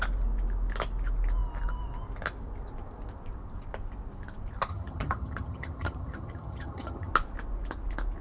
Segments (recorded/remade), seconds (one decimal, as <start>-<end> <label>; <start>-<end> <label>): 0.0-4.7 recorded; 4.7-7.1 remade; 7.1-8.2 recorded